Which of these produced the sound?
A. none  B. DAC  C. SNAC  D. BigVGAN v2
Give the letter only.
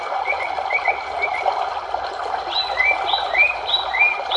A